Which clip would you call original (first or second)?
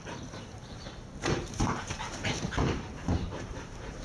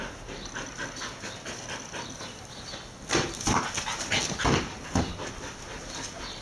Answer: second